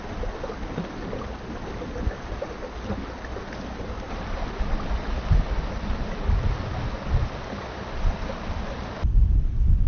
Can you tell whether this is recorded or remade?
recorded